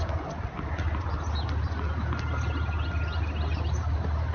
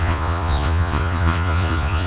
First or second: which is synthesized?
second